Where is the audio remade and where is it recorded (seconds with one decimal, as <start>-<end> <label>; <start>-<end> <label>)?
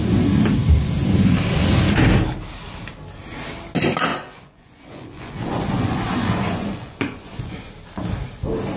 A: 0.0-4.1 recorded; 4.1-7.7 remade; 7.7-8.8 recorded